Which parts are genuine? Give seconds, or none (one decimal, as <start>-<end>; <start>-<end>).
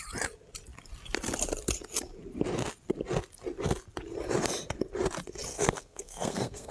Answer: 0.0-5.5